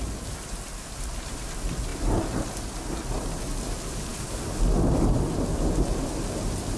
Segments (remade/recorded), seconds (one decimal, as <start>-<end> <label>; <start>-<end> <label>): 0.0-6.8 recorded